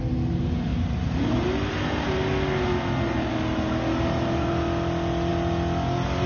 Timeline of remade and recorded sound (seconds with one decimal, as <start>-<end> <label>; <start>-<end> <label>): 0.0-6.3 recorded